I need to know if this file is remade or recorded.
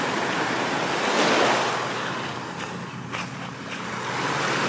recorded